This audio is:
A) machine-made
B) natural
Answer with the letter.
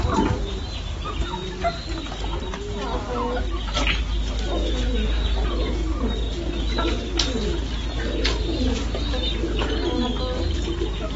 B